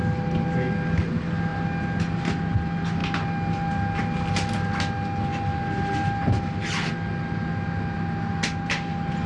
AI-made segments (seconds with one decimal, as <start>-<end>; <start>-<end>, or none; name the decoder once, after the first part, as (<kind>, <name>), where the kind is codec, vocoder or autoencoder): none